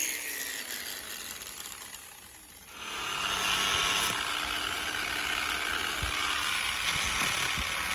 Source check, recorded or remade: recorded